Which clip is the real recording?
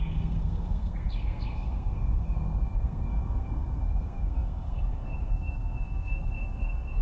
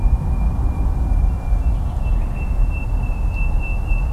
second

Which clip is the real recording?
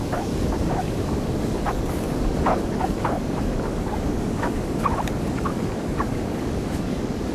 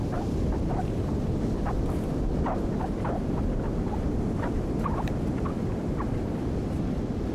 second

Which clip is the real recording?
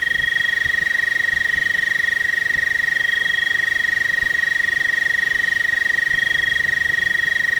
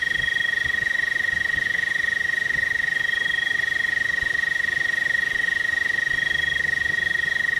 first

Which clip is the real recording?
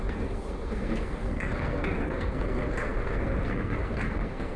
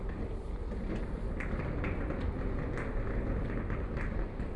second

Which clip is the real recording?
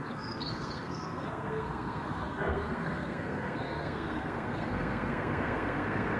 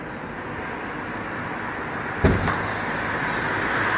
second